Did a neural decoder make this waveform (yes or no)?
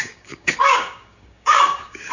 yes